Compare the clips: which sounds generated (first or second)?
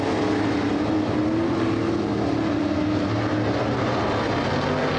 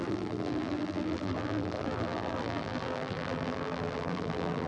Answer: second